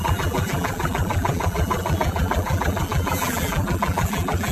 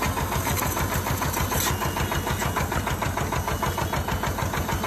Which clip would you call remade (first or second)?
first